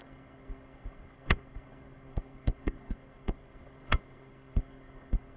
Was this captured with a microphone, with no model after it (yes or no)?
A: no